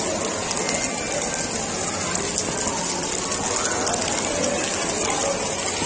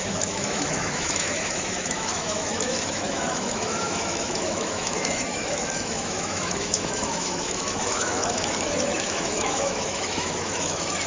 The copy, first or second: second